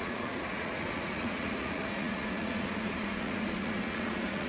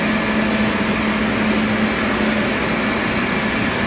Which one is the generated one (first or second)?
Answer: first